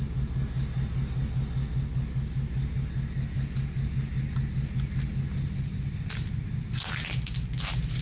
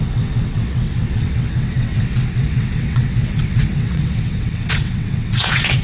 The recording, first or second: first